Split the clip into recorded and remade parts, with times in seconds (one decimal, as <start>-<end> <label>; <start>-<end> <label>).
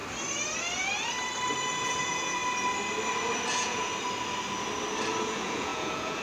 0.0-1.6 recorded; 1.6-2.4 remade; 2.4-3.5 recorded; 3.5-3.9 remade; 3.9-5.2 recorded; 5.2-6.2 remade